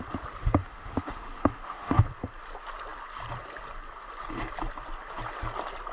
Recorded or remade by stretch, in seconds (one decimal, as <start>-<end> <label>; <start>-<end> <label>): 0.0-0.6 recorded; 0.6-2.0 remade; 2.0-5.9 recorded